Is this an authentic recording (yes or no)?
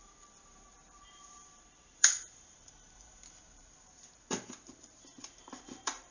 no